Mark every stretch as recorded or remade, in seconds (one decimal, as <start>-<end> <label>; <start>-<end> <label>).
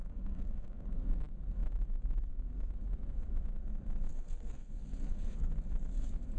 0.0-1.0 remade; 1.0-4.1 recorded; 4.1-5.5 remade; 5.5-6.4 recorded